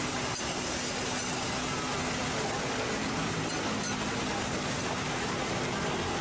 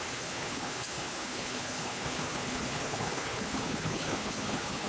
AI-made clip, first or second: second